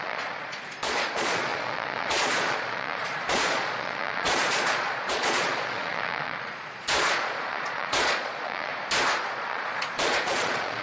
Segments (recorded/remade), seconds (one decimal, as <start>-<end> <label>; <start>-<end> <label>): 0.0-8.7 remade; 8.7-9.2 recorded; 9.2-10.8 remade